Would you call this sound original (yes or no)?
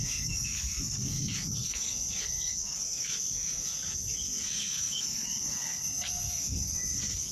no